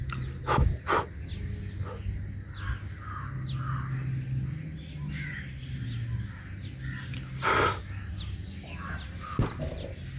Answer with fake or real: real